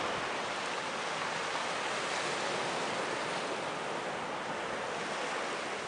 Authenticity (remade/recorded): recorded